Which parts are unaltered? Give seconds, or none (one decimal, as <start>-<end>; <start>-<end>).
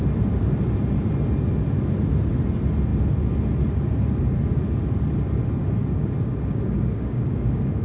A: 0.0-5.8